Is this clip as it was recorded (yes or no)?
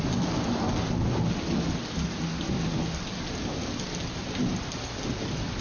yes